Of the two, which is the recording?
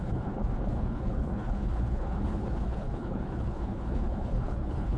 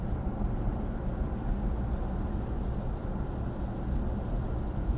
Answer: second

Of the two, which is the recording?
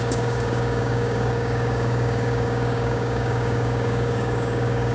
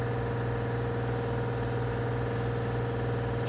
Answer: second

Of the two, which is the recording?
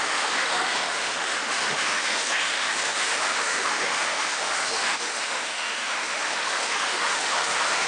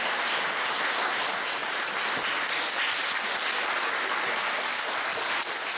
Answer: second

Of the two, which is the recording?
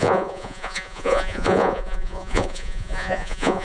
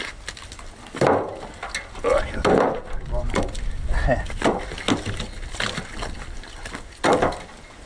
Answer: second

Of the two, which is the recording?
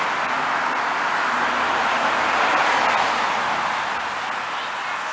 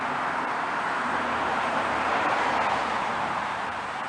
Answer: first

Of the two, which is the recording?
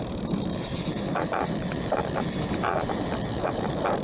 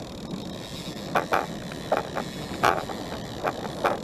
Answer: second